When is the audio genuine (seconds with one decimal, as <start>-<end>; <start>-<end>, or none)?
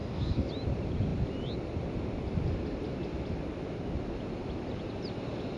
0.5-5.6